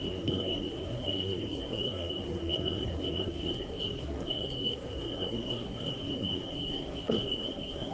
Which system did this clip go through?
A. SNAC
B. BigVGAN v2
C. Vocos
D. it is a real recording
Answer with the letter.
A